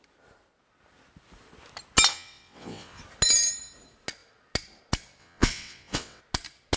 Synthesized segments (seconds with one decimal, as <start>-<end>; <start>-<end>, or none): 2.1-3.0; 5.2-6.2